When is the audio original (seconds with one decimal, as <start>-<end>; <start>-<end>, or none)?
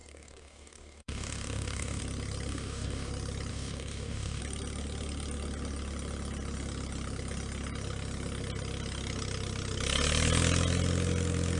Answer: 2.0-2.5; 3.1-3.5; 4.4-11.6